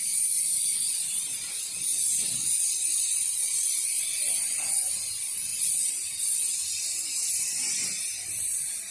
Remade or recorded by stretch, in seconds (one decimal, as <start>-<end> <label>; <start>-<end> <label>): 0.0-7.2 remade; 7.2-8.4 recorded; 8.4-8.9 remade